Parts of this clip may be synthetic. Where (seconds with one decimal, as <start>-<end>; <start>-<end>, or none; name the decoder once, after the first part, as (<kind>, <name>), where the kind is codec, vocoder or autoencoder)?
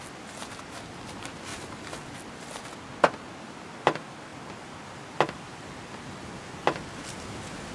none